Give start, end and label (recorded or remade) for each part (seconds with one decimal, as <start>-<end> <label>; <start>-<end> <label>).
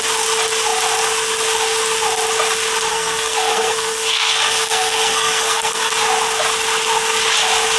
0.0-2.9 recorded; 2.9-5.9 remade; 5.9-7.8 recorded